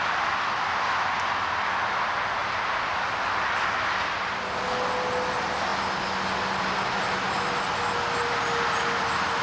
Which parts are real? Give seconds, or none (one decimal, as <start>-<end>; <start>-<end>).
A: 0.0-9.4